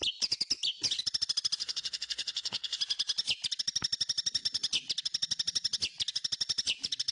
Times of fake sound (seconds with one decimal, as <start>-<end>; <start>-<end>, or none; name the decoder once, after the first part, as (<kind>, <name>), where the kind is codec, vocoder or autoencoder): 1.6-2.8 (codec, SNAC)